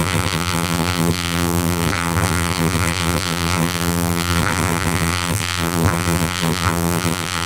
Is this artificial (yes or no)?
yes